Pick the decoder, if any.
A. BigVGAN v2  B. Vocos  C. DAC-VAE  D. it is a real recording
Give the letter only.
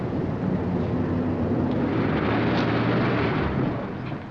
D